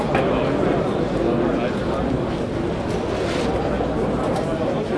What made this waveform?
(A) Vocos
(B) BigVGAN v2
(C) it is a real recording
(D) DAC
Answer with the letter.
C